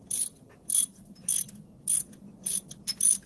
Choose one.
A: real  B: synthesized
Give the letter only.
B